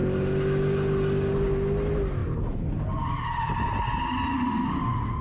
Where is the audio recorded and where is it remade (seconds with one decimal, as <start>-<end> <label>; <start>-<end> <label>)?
0.0-5.2 recorded